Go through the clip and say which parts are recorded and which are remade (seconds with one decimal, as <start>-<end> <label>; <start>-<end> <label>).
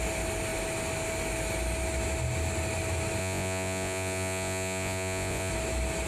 0.0-3.2 recorded; 3.2-5.5 remade; 5.5-6.1 recorded